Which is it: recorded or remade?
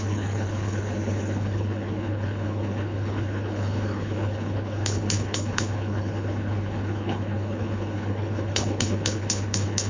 remade